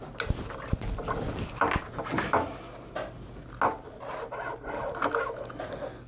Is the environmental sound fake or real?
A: real